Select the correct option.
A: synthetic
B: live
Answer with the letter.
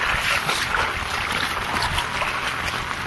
B